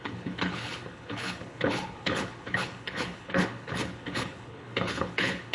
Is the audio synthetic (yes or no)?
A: yes